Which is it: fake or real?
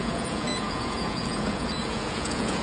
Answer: fake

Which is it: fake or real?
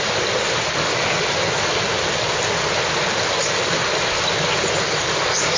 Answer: real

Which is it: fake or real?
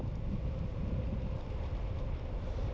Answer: real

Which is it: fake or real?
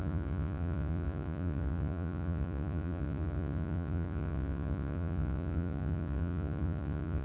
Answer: fake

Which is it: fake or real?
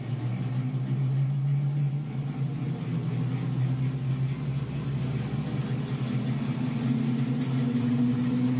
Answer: real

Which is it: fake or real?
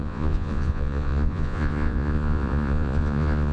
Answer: fake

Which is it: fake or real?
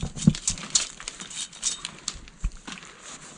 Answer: real